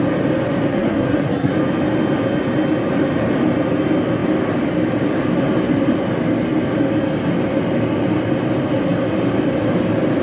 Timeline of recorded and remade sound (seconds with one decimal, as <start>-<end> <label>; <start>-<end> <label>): 0.0-0.7 recorded; 0.7-1.5 remade; 1.5-10.2 recorded